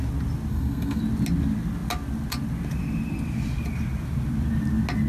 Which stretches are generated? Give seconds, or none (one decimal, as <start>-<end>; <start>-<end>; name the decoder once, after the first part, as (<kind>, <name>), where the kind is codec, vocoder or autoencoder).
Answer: 0.5-1.0 (codec, SNAC)